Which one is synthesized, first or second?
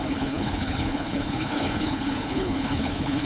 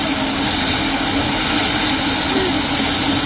first